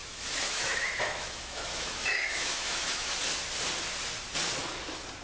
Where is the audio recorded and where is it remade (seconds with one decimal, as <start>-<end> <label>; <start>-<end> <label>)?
0.0-3.1 remade; 3.1-5.2 recorded